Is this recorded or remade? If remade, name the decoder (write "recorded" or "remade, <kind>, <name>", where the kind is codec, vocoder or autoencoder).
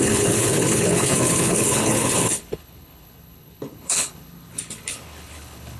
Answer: remade, codec, HILCodec